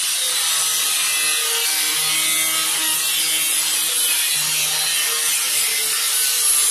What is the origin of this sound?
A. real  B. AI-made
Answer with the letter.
A